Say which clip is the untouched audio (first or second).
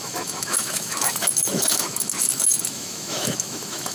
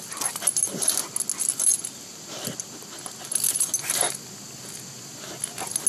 second